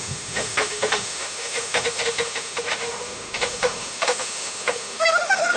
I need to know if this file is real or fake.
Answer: fake